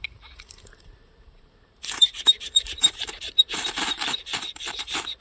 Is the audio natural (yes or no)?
no